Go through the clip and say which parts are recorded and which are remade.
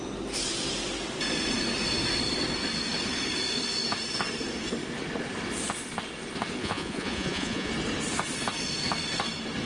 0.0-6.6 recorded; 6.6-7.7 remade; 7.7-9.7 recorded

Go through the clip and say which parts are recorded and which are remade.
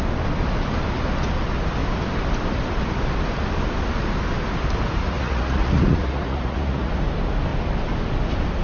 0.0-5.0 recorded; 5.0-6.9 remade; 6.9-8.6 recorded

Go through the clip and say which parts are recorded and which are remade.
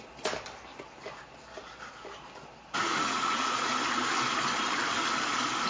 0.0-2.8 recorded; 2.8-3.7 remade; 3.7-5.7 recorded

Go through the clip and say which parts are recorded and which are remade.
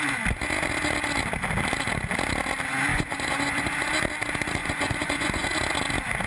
0.0-2.9 recorded; 2.9-3.9 remade; 3.9-4.6 recorded; 4.6-5.5 remade; 5.5-6.3 recorded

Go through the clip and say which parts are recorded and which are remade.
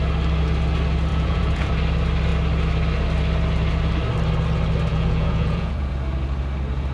0.0-1.1 recorded; 1.1-1.7 remade; 1.7-4.9 recorded; 4.9-5.9 remade; 5.9-6.9 recorded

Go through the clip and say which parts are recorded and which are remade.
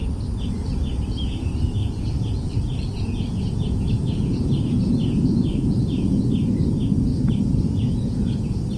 0.0-1.8 recorded; 1.8-6.2 remade; 6.2-7.1 recorded; 7.1-8.4 remade; 8.4-8.8 recorded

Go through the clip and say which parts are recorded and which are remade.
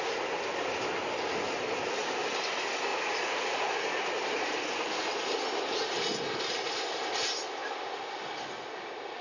0.0-2.9 recorded; 2.9-3.7 remade; 3.7-9.2 recorded